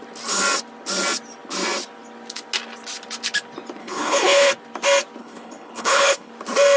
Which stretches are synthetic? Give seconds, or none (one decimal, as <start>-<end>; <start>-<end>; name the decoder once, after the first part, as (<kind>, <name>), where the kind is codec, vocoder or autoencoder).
3.8-4.5 (codec, HILCodec); 5.2-6.3